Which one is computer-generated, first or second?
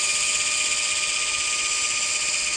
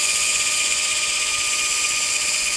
second